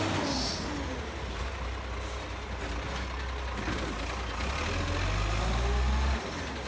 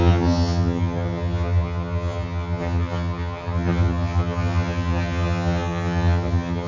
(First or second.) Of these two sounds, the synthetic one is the second